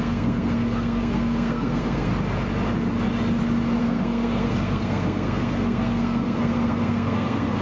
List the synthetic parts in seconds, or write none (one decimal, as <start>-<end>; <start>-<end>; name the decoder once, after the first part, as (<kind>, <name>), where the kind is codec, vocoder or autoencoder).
0.0-2.1 (codec, SNAC); 3.8-7.6